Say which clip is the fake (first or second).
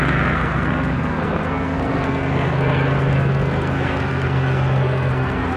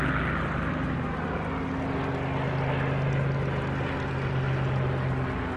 first